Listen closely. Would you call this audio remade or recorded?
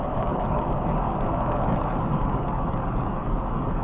remade